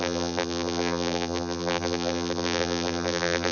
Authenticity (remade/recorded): remade